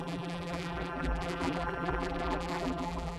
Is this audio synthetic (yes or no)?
yes